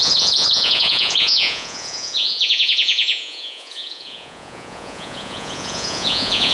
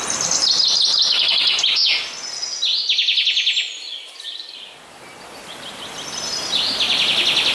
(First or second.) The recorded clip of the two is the second